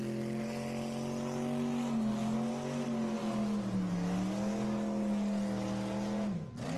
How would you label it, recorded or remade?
recorded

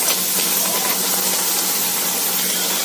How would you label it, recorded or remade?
recorded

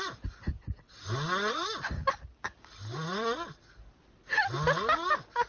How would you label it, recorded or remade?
recorded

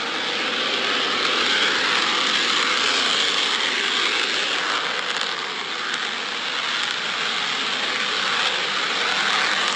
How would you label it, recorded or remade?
recorded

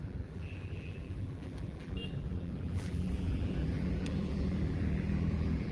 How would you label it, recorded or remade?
remade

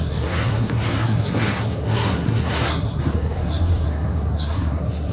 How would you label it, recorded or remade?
remade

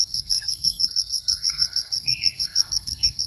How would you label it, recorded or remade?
remade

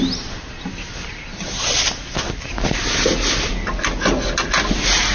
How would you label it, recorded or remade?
recorded